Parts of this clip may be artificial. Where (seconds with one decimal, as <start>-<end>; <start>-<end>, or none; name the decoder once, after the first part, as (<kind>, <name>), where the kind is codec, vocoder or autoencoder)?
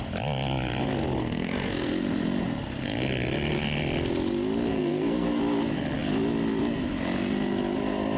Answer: 1.2-1.9 (codec, SNAC); 4.7-5.4